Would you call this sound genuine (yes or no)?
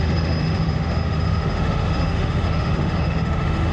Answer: no